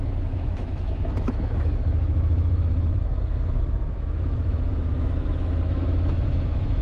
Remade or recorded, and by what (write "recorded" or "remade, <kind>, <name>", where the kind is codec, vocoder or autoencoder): remade, autoencoder, DAC-VAE